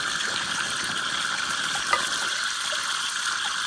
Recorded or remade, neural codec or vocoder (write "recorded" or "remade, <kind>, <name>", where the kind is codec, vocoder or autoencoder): recorded